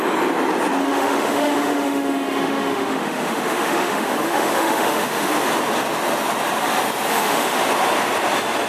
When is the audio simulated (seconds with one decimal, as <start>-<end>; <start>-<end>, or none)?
0.8-5.3; 7.1-7.6